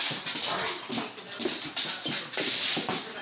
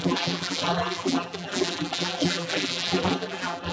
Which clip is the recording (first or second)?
first